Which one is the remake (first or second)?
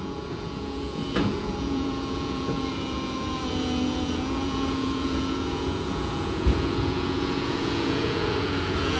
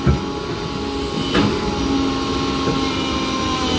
first